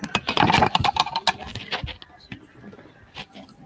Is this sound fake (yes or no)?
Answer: no